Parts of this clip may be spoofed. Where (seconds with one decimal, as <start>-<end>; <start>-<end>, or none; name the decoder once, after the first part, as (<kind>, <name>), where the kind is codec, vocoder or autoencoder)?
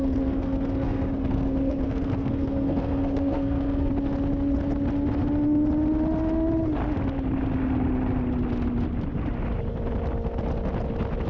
0.0-3.9 (codec, SNAC)